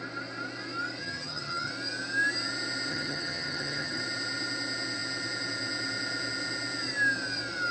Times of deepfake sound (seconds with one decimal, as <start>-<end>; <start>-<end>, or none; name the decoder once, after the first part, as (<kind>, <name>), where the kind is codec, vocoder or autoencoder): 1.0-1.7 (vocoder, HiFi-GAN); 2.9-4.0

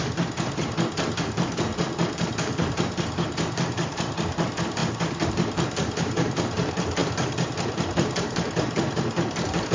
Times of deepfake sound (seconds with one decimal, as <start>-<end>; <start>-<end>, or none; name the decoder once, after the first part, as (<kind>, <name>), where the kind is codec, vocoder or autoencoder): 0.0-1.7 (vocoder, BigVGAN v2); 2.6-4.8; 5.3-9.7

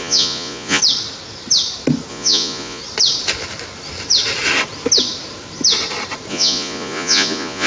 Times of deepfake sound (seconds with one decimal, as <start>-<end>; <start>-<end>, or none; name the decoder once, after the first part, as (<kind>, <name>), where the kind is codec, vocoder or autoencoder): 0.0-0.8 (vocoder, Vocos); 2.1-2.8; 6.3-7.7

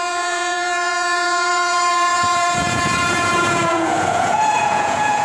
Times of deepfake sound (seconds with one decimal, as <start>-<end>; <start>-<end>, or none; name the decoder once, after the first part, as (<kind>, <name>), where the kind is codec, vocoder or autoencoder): 0.0-5.2 (vocoder, Vocos)

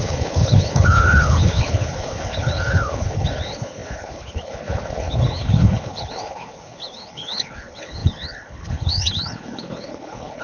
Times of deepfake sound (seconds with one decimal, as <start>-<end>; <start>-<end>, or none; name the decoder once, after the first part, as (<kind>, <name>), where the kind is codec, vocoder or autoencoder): 0.0-10.4 (codec, HILCodec)

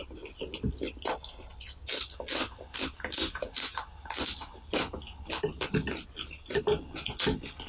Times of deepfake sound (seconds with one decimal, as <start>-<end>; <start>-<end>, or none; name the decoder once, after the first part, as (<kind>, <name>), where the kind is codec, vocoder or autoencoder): none